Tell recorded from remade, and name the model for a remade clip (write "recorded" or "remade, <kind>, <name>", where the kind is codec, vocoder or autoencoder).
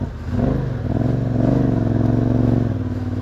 recorded